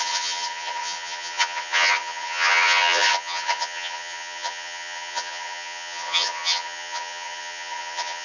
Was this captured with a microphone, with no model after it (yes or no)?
no